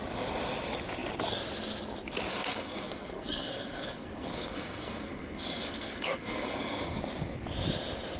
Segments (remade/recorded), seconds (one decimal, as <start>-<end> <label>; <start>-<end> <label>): 0.0-2.3 recorded; 2.3-7.0 remade; 7.0-8.2 recorded